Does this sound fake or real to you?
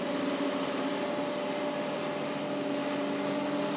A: real